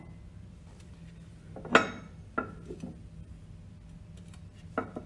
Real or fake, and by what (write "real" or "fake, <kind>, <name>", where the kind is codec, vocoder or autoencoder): real